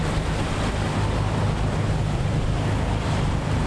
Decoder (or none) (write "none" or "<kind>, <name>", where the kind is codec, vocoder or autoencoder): none